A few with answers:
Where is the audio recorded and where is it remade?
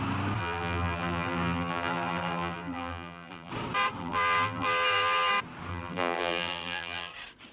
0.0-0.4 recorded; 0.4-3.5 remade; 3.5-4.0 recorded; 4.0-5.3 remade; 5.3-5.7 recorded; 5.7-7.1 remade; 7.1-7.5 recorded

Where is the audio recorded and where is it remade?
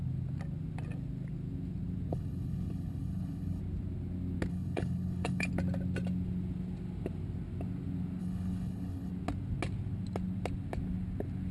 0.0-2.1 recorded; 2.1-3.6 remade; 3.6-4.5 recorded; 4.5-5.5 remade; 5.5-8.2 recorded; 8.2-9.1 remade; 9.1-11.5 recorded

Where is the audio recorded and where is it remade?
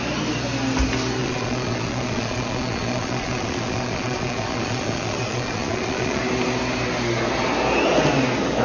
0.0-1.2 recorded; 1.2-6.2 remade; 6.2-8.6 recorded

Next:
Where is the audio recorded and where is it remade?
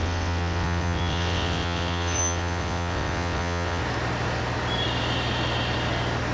0.0-3.8 remade; 3.8-6.3 recorded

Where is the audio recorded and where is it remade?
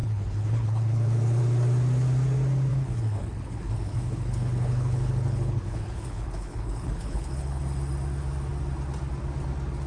0.0-1.4 remade; 1.4-2.7 recorded; 2.7-7.6 remade; 7.6-9.9 recorded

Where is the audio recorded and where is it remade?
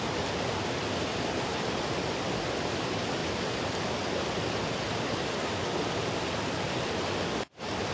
0.0-7.9 recorded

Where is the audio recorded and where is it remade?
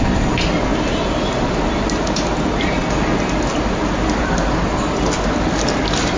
0.0-0.7 recorded; 0.7-1.8 remade; 1.8-6.2 recorded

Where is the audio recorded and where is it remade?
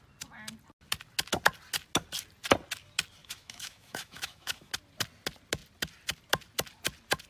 0.0-3.2 recorded; 3.2-4.7 remade; 4.7-7.3 recorded